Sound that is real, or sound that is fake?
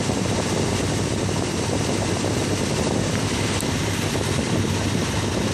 fake